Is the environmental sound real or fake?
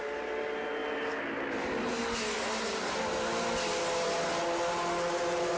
real